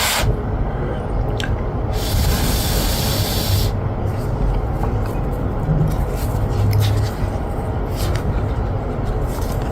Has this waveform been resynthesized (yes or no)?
no